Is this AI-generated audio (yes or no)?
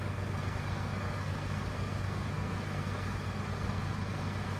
yes